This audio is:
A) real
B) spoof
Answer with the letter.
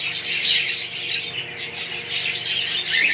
A